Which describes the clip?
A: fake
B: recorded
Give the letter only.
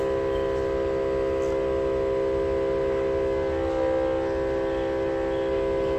B